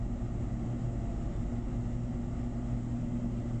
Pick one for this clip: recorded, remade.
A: recorded